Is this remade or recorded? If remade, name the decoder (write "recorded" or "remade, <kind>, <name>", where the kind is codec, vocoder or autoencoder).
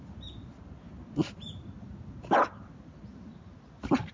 recorded